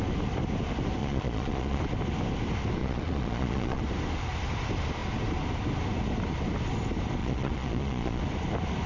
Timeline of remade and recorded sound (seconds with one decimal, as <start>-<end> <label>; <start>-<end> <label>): 0.0-1.0 recorded; 1.0-1.8 remade; 1.8-2.8 recorded; 2.8-3.8 remade; 3.8-7.2 recorded; 7.2-8.2 remade; 8.2-8.9 recorded